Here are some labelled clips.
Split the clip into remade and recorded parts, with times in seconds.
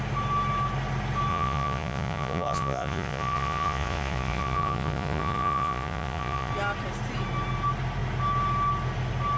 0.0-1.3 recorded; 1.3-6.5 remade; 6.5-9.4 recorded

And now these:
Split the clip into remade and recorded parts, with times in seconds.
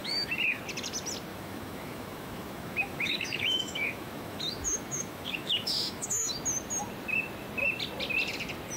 0.0-0.6 remade; 0.6-1.3 recorded; 1.3-6.3 remade; 6.3-8.8 recorded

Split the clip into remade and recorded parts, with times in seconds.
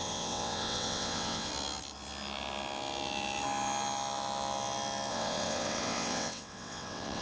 0.0-1.5 remade; 1.5-5.1 recorded; 5.1-7.2 remade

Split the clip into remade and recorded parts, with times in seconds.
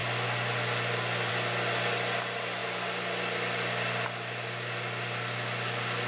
0.0-6.1 recorded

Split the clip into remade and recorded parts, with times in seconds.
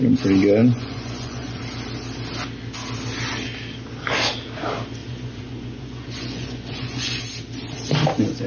0.0-0.6 recorded; 0.6-1.6 remade; 1.6-5.0 recorded; 5.0-7.2 remade; 7.2-8.5 recorded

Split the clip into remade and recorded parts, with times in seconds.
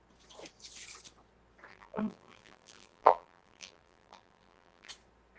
0.0-1.7 recorded; 1.7-4.9 remade; 4.9-5.4 recorded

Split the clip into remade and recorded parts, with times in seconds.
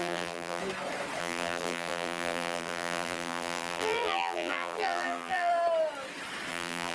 0.0-0.6 remade; 0.6-1.2 recorded; 1.2-5.5 remade; 5.5-6.5 recorded; 6.5-6.9 remade